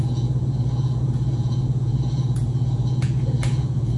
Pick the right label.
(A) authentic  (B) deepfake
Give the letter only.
B